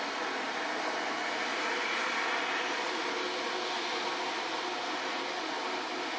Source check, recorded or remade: recorded